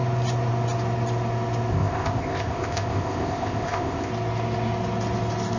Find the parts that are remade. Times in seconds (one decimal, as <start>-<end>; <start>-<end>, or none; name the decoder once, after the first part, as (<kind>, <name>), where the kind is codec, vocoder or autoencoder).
1.7-4.1 (codec, ZipCodec)